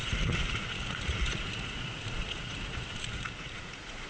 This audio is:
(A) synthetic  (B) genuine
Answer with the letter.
A